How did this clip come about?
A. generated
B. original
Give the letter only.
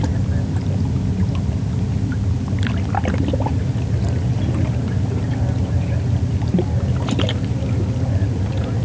B